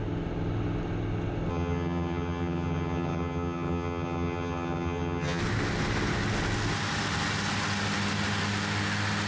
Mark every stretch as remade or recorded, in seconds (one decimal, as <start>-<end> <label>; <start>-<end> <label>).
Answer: 0.0-1.5 recorded; 1.5-5.4 remade; 5.4-9.3 recorded